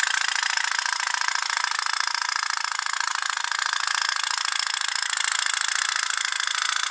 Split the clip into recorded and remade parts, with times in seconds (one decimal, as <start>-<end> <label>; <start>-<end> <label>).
0.0-6.9 recorded